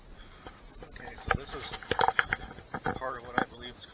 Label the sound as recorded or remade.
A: recorded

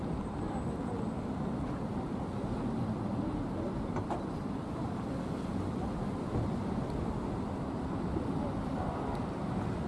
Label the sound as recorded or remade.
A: recorded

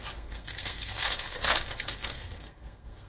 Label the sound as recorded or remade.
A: remade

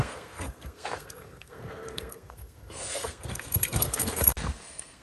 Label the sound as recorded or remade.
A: remade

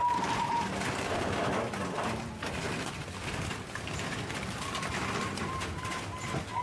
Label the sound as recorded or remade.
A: recorded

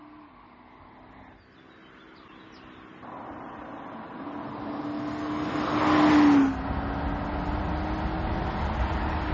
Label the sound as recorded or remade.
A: recorded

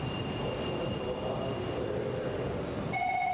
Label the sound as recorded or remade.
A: recorded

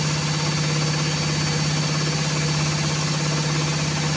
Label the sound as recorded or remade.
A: recorded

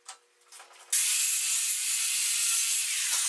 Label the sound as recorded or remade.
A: recorded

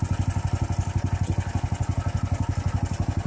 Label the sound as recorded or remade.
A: recorded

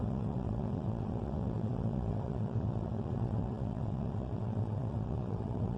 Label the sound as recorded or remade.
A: remade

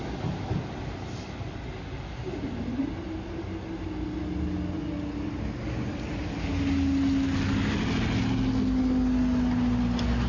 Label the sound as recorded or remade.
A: recorded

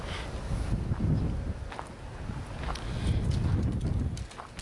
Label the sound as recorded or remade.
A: recorded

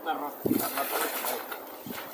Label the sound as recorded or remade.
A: recorded